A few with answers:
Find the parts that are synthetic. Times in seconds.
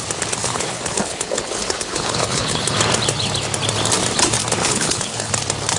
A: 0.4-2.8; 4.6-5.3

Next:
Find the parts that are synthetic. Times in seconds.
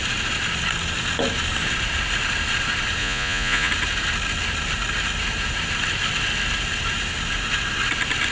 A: 3.0-3.7